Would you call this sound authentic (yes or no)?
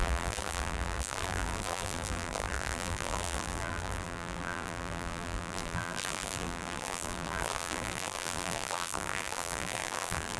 no